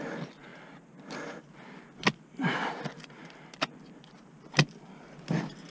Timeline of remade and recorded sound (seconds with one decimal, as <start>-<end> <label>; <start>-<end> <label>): 0.0-5.7 recorded